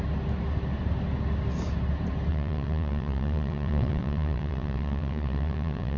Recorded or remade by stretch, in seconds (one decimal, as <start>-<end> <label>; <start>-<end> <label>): 0.0-2.3 recorded; 2.3-6.0 remade